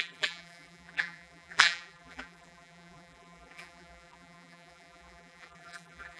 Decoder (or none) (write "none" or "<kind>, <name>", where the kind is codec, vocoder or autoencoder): vocoder, BigVGAN v2